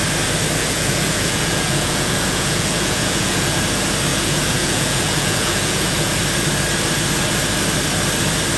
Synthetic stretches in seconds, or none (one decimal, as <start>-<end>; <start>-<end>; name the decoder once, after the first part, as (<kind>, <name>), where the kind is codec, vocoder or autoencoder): 0.6-3.6 (vocoder, Vocos); 4.1-6.2